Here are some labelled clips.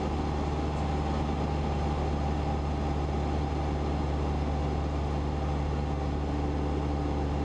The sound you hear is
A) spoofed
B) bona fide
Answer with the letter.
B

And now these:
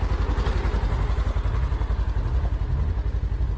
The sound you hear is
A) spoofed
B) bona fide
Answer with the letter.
B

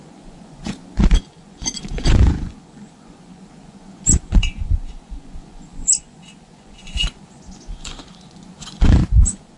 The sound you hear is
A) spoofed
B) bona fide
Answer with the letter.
A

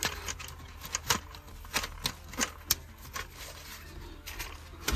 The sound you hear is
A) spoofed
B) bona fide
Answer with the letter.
B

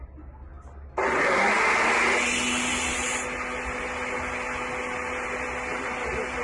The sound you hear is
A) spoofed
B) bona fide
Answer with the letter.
B